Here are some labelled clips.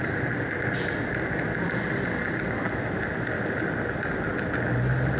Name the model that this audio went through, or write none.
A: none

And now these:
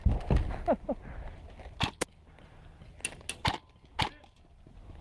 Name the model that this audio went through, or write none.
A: none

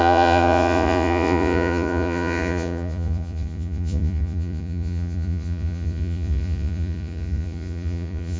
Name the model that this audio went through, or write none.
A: vocoder, Vocos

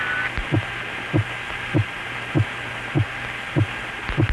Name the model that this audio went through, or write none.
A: none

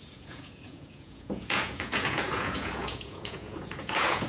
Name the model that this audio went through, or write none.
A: vocoder, Vocos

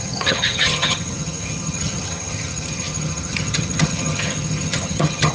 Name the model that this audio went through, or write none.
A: vocoder, HiFi-GAN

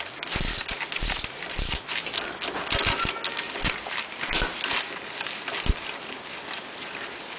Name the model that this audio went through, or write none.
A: none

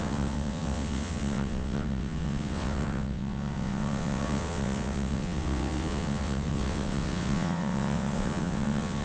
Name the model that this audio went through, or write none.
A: vocoder, WaveNeXt